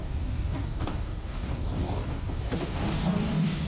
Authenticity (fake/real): fake